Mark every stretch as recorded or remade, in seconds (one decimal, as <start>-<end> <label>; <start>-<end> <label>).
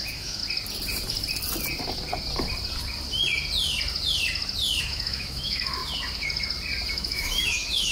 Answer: 0.0-0.4 remade; 0.4-4.8 recorded; 4.8-5.8 remade; 5.8-6.9 recorded; 6.9-7.9 remade